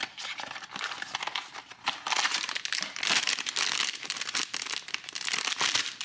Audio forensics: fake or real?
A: real